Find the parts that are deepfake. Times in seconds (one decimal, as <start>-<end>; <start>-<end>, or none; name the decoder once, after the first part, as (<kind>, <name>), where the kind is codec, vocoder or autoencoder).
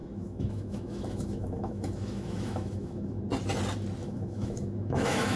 0.0-3.2 (autoencoder, DAC-VAE); 4.0-5.4